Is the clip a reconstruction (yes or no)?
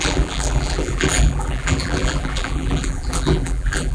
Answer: yes